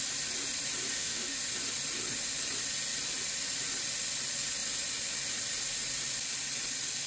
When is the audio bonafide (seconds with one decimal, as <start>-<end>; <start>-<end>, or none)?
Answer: 0.0-0.9; 1.4-7.1